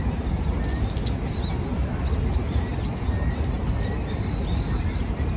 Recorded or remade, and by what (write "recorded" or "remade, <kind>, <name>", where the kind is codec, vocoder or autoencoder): recorded